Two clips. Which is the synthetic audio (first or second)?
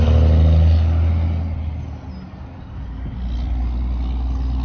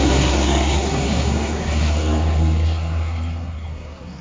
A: second